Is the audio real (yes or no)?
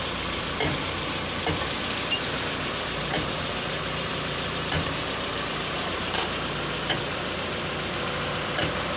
no